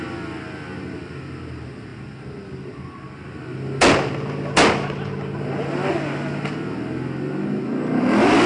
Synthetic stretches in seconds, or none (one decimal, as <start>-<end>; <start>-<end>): none